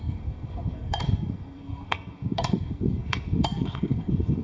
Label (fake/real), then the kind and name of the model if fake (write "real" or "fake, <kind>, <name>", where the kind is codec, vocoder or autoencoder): fake, codec, SNAC